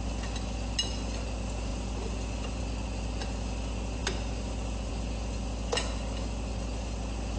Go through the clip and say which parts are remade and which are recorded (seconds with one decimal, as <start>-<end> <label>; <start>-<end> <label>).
0.0-7.4 recorded